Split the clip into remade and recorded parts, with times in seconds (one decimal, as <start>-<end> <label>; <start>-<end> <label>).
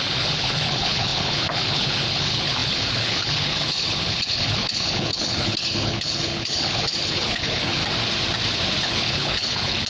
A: 0.0-7.8 remade; 7.8-8.8 recorded; 8.8-9.9 remade